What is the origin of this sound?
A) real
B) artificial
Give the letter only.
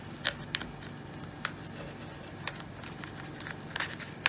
A